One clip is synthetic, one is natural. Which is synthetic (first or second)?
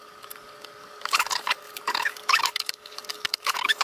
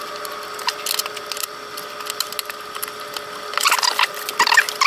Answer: first